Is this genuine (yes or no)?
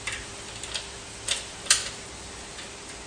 yes